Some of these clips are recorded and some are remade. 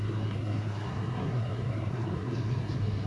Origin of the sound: remade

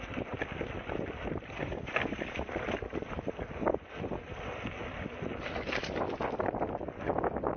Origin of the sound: recorded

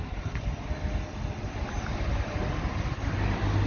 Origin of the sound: recorded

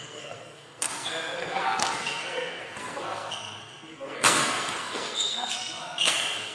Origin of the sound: remade